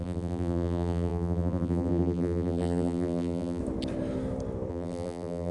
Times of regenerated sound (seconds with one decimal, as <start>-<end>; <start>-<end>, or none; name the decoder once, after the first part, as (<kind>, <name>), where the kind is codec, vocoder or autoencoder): 0.0-3.6 (vocoder, BigVGAN v2); 4.7-5.5